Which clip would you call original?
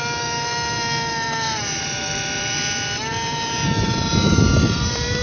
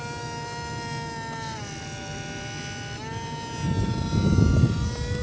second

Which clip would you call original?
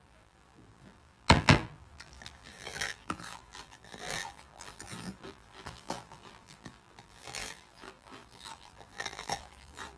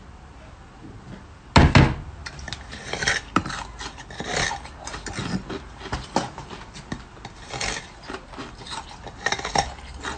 second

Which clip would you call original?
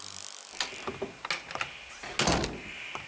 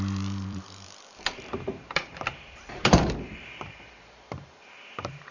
first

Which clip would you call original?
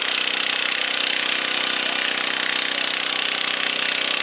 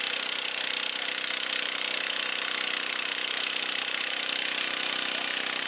first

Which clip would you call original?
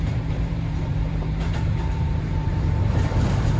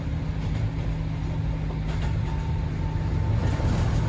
second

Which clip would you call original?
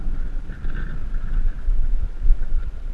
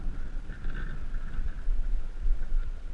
second